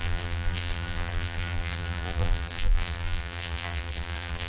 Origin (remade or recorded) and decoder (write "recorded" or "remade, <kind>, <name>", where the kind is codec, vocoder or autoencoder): remade, vocoder, BigVGAN v2